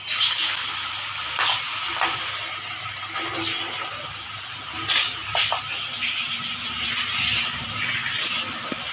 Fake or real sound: real